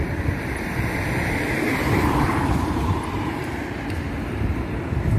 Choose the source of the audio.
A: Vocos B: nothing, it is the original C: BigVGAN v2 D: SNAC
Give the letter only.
C